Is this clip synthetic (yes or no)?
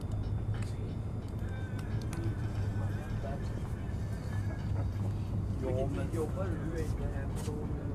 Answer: no